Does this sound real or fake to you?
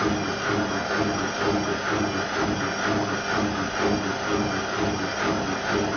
real